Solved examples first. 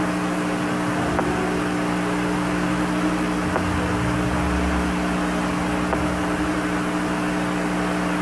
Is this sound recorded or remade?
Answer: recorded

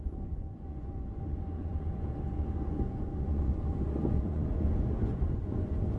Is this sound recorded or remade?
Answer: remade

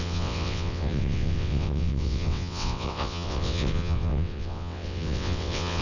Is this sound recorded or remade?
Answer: remade